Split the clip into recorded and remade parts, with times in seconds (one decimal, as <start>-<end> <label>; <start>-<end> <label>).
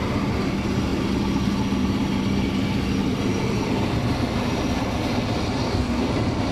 0.0-5.6 recorded; 5.6-6.1 remade; 6.1-6.5 recorded